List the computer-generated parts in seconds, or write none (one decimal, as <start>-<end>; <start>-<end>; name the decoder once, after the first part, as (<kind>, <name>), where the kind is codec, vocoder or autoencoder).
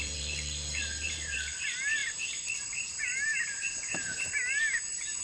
0.0-5.2 (vocoder, BigVGAN v2)